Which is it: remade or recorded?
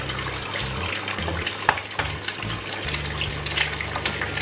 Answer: recorded